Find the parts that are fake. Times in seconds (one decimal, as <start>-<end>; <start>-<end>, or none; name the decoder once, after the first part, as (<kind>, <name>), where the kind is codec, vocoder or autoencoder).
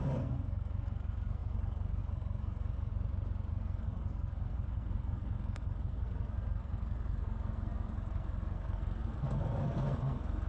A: 0.0-2.9 (codec, SNAC); 3.5-10.5